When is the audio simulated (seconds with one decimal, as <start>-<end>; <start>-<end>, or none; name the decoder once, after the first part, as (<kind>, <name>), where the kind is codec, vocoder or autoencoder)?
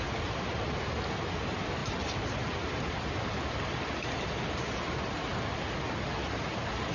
none